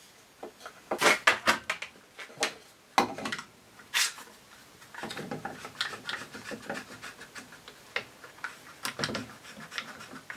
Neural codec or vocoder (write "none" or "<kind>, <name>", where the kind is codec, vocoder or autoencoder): none